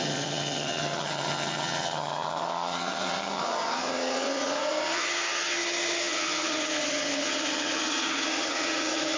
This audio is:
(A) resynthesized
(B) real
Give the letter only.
A